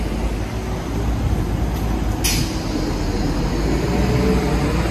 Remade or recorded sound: recorded